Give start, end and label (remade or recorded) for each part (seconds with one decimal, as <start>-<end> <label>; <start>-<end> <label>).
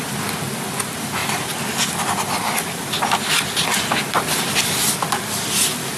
0.0-6.0 recorded